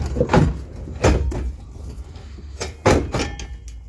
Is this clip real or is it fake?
real